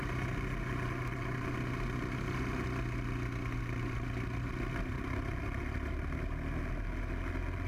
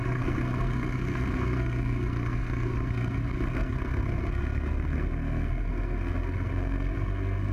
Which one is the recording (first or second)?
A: first